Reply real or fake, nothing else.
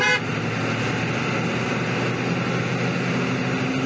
real